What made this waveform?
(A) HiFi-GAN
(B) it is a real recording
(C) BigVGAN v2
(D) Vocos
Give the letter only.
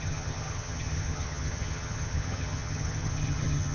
A